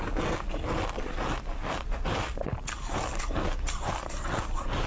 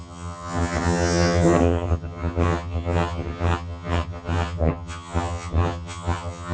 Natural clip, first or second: first